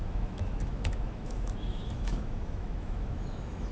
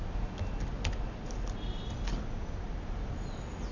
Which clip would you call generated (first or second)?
first